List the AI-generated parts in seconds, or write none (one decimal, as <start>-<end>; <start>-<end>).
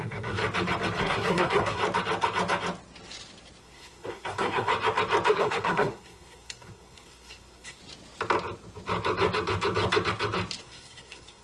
0.0-0.4; 1.0-1.8; 3.6-4.7; 5.3-7.8; 10.6-11.4